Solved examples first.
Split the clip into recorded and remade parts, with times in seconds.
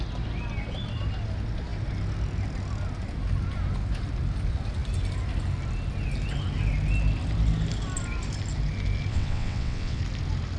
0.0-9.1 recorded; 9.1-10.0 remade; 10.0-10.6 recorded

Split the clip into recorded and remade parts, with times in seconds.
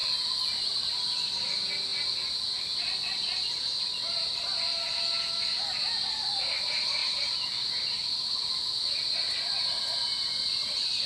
0.0-11.1 recorded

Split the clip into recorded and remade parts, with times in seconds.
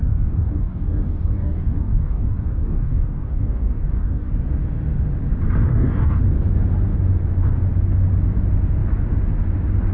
0.0-4.3 remade; 4.3-5.7 recorded; 5.7-6.2 remade; 6.2-9.9 recorded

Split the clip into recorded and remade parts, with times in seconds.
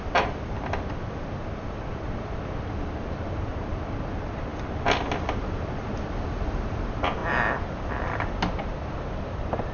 0.0-9.7 recorded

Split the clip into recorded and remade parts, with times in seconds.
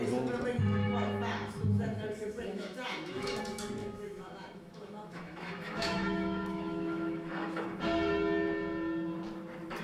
0.0-0.8 recorded; 0.8-3.4 remade; 3.4-3.8 recorded; 3.8-7.8 remade; 7.8-9.8 recorded